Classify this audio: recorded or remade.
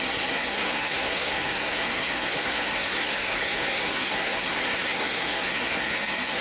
remade